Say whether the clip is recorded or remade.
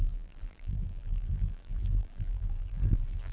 remade